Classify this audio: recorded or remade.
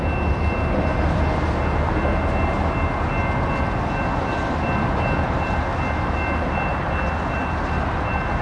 recorded